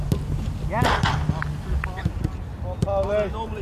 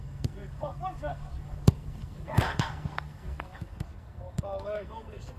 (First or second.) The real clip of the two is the first